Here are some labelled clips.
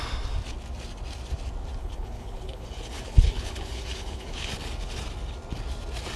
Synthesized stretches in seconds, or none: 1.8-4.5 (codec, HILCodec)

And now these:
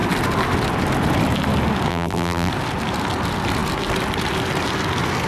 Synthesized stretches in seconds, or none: 1.9-2.5 (vocoder, BigVGAN v2)

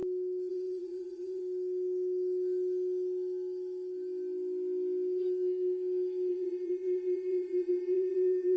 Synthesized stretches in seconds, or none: 0.5-1.4 (vocoder, WaveNeXt); 6.3-8.6

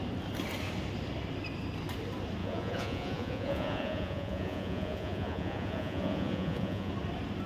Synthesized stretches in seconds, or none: 2.4-6.9 (vocoder, Vocos)

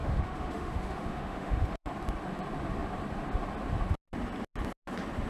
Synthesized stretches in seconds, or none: 0.0-1.9 (autoencoder, DAC-VAE)

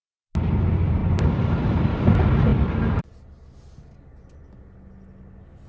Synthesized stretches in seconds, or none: 1.0-2.0 (vocoder, BigVGAN v2); 2.5-3.0

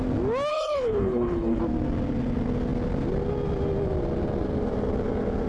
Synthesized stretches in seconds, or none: 0.5-1.6 (codec, HILCodec)

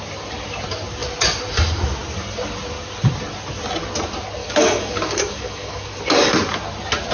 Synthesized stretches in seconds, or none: 4.4-6.0 (codec, DAC)